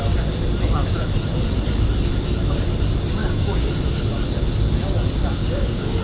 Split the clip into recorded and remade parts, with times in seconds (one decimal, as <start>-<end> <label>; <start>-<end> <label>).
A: 0.0-3.2 recorded; 3.2-3.7 remade; 3.7-5.4 recorded; 5.4-6.0 remade